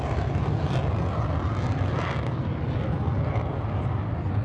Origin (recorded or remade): recorded